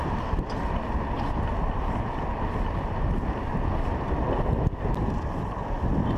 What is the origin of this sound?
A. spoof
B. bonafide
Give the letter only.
B